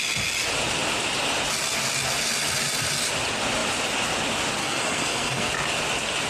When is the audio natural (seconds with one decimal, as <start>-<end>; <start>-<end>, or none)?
0.0-4.6; 5.5-6.3